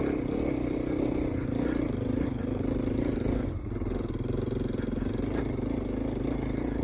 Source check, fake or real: real